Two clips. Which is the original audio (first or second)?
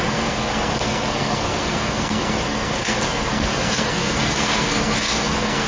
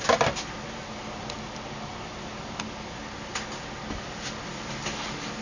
second